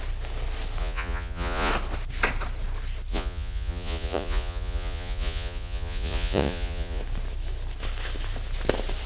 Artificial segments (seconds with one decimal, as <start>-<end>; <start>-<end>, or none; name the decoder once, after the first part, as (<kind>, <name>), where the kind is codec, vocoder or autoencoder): 0.8-1.7 (vocoder, Vocos); 3.1-7.0